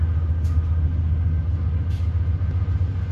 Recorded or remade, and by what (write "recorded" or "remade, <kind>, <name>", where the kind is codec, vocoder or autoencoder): recorded